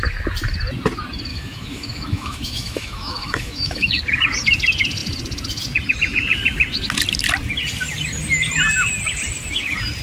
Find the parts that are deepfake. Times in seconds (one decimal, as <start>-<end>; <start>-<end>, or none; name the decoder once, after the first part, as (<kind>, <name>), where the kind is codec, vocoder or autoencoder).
1.3-4.0 (autoencoder, DAC-VAE)